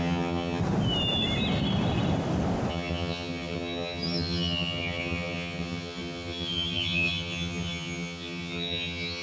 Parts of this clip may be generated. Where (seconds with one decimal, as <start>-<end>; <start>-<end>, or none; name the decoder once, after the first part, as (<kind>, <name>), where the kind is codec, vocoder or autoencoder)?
0.0-0.6 (vocoder, HiFi-GAN); 2.7-9.2